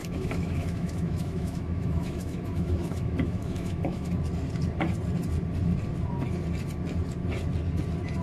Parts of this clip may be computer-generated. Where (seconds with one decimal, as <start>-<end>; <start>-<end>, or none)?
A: 0.0-4.1